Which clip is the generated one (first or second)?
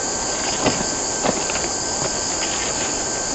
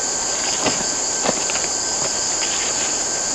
second